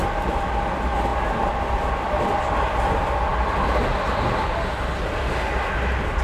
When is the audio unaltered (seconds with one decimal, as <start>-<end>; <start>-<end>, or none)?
0.0-6.2